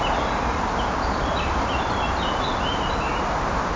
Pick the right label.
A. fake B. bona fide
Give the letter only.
B